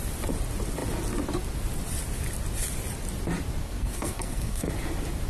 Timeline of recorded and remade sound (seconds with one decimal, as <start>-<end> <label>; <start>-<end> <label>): 0.0-3.6 recorded; 3.6-4.7 remade; 4.7-5.3 recorded